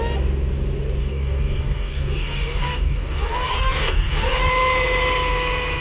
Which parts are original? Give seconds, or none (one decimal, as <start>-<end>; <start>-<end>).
0.0-1.0; 4.5-5.8